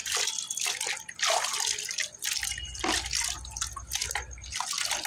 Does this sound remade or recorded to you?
recorded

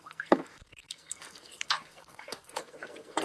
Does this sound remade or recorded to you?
remade